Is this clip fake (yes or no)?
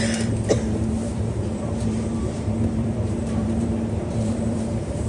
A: yes